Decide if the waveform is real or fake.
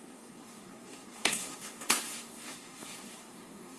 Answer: fake